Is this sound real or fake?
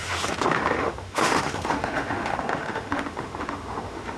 fake